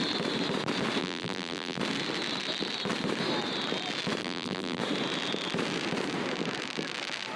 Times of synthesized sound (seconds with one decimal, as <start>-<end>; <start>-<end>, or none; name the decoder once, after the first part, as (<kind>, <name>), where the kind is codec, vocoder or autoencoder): 1.0-1.8 (vocoder, BigVGAN v2); 4.2-4.8